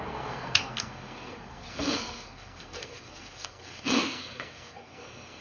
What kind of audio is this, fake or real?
fake